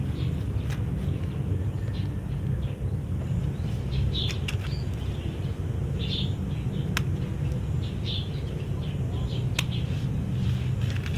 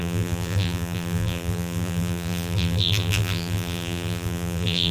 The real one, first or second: first